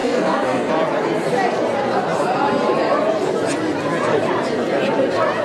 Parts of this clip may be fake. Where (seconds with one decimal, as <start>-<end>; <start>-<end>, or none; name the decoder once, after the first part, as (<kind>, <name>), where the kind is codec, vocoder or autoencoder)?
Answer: 0.0-0.7 (codec, SNAC)